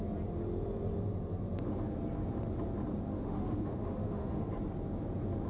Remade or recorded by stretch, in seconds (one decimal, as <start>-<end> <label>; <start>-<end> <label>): 0.0-3.1 recorded; 3.1-4.5 remade; 4.5-5.5 recorded